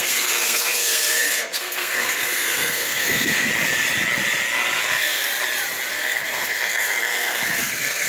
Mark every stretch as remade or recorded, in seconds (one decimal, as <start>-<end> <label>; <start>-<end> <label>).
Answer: 0.0-3.5 remade; 3.5-4.8 recorded; 4.8-5.3 remade; 5.3-5.9 recorded; 5.9-8.1 remade